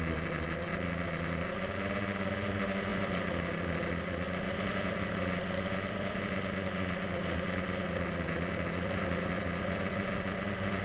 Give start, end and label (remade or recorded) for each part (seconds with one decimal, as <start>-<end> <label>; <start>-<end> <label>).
0.0-10.8 recorded